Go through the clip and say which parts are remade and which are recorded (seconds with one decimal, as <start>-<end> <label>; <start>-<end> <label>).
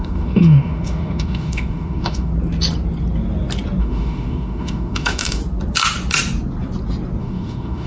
0.0-2.3 remade; 2.3-3.8 recorded; 3.8-5.4 remade; 5.4-7.2 recorded; 7.2-7.9 remade